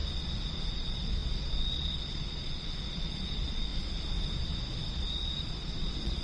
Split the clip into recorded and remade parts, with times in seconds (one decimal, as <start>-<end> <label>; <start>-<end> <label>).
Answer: 0.0-0.7 recorded; 0.7-3.7 remade; 3.7-4.9 recorded; 4.9-6.2 remade